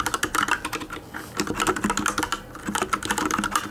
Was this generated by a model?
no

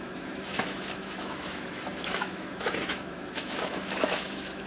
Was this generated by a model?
yes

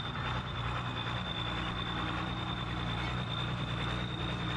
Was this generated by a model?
no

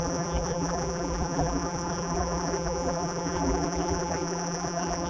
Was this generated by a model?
yes